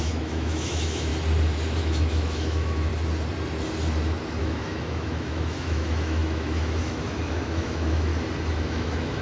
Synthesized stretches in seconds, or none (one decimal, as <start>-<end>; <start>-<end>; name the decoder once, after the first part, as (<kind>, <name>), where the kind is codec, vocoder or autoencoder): 0.0-1.1 (autoencoder, DAC-VAE); 1.8-2.9; 4.4-8.1; 8.7-9.2